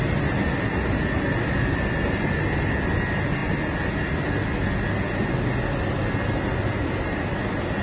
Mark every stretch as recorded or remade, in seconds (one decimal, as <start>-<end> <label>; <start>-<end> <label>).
0.0-7.8 recorded